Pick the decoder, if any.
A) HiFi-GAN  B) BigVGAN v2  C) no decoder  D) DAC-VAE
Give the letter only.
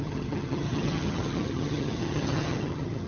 A